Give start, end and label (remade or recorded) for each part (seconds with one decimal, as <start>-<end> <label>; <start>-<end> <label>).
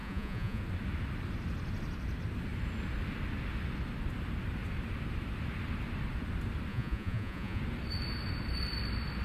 0.0-0.6 remade; 0.6-6.7 recorded; 6.7-7.6 remade; 7.6-9.2 recorded